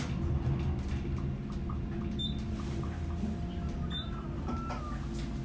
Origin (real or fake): real